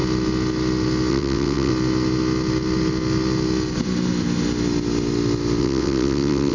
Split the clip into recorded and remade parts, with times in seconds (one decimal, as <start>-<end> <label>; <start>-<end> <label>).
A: 0.0-1.1 recorded; 1.1-1.7 remade; 1.7-5.6 recorded; 5.6-6.5 remade